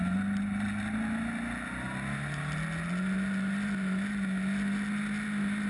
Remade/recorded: recorded